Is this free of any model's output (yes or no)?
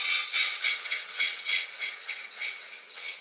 no